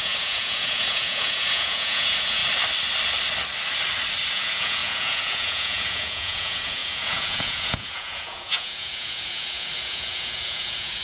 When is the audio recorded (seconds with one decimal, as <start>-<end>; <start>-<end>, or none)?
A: 2.4-4.3